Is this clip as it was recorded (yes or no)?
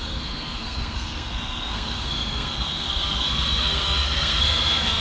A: no